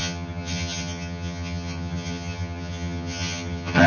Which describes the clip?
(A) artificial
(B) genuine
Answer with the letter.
A